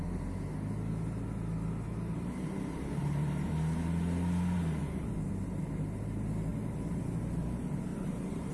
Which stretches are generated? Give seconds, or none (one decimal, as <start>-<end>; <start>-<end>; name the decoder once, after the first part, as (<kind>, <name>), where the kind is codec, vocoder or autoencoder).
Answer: 2.9-3.5 (vocoder, BigVGAN v2); 6.5-7.0; 7.9-8.5